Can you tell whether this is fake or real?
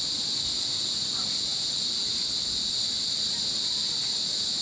real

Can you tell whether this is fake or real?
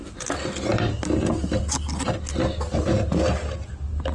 real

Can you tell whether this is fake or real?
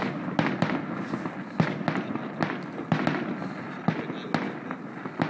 real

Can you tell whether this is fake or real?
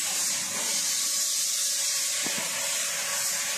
real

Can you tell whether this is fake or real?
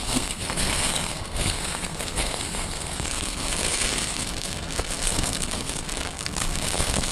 fake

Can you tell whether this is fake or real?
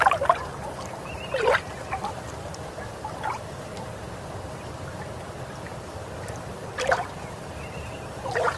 fake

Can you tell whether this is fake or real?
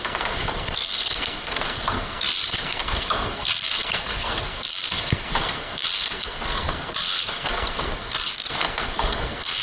fake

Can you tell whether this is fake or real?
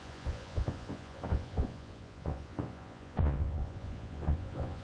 fake